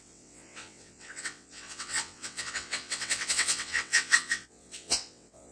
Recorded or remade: remade